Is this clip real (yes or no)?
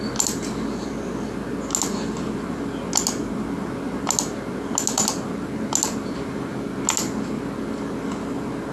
yes